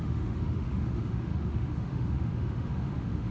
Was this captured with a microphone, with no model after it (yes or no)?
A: no